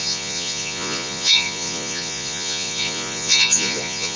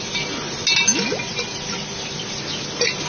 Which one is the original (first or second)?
second